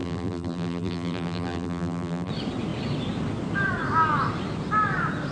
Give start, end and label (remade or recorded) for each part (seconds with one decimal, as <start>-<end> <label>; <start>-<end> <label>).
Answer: 0.0-2.3 remade; 2.3-5.3 recorded

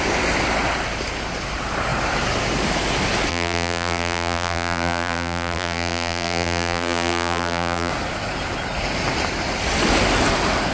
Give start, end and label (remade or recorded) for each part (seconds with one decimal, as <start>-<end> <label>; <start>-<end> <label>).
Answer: 0.0-3.3 recorded; 3.3-7.9 remade; 7.9-10.7 recorded

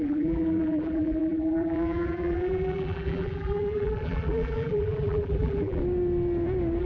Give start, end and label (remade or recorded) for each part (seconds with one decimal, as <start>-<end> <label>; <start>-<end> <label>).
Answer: 0.0-5.8 remade; 5.8-6.8 recorded

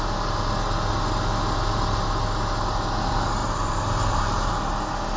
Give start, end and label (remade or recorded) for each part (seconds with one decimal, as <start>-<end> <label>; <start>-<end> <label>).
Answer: 0.0-3.4 recorded; 3.4-4.5 remade; 4.5-5.2 recorded

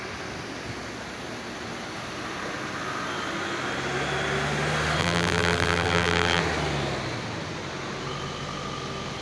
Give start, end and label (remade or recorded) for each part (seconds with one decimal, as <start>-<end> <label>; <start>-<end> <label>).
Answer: 0.0-5.0 recorded; 5.0-6.4 remade; 6.4-9.2 recorded